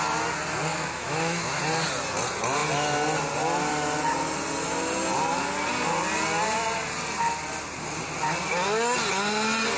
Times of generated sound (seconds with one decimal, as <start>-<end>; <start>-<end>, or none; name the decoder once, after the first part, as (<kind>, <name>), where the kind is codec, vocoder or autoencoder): 0.7-1.6 (autoencoder, DAC-VAE)